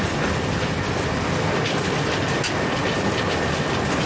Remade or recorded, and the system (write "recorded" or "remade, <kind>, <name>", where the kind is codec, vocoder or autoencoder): recorded